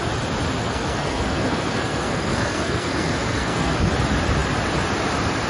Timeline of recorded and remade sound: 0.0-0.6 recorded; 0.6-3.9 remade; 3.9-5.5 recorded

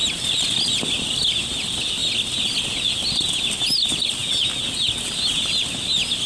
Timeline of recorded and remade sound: 0.0-6.3 recorded

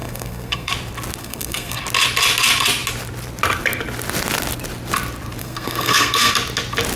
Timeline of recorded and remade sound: 0.0-0.7 remade; 0.7-1.2 recorded; 1.2-1.8 remade; 1.8-5.4 recorded; 5.4-6.3 remade; 6.3-7.0 recorded

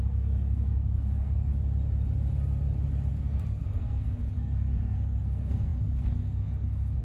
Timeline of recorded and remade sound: 0.0-1.5 remade; 1.5-3.1 recorded; 3.1-7.0 remade